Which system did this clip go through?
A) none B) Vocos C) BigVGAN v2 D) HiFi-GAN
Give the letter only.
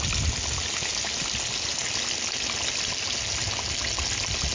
A